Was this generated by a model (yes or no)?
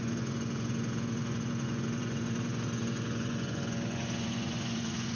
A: yes